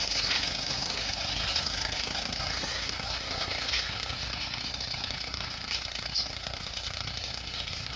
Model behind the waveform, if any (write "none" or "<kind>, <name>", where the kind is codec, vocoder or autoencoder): codec, SNAC